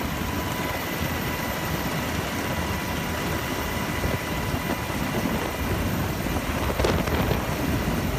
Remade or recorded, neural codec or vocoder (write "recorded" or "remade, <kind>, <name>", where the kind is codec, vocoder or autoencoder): recorded